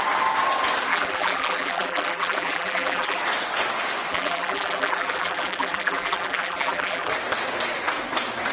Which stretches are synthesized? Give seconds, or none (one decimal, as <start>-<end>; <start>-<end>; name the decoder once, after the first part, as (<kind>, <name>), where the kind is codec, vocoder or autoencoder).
0.9-3.2 (vocoder, BigVGAN v2); 4.1-7.1